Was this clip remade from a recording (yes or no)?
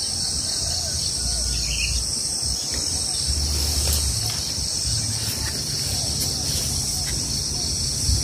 no